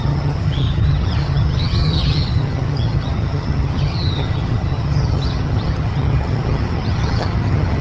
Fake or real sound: fake